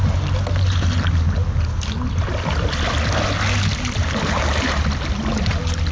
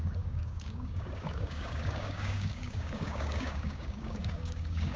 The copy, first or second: second